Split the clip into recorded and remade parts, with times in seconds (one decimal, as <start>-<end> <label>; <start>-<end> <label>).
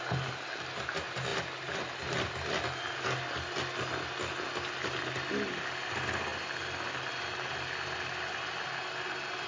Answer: 0.0-9.5 recorded